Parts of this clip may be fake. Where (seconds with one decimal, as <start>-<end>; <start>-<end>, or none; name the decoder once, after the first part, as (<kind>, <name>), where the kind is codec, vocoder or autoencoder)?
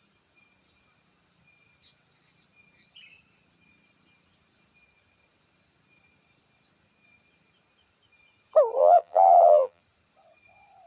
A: 8.8-9.8 (vocoder, BigVGAN v2)